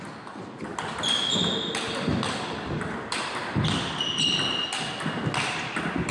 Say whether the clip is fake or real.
real